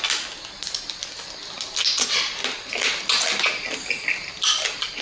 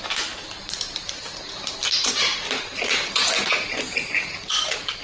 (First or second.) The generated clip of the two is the second